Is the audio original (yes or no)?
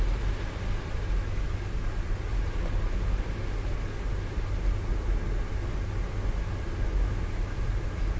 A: yes